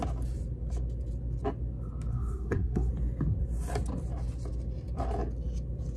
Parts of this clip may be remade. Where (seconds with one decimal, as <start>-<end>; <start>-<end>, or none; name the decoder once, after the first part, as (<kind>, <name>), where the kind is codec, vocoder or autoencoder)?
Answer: 2.1-2.9 (codec, SNAC)